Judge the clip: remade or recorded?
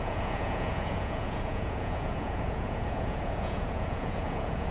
remade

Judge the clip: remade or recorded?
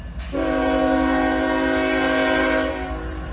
recorded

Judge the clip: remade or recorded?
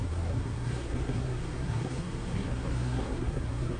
remade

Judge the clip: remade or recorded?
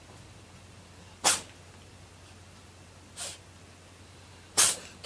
recorded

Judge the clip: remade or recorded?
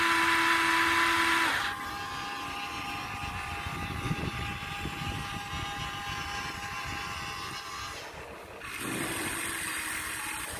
recorded